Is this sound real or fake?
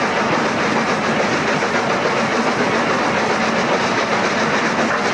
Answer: real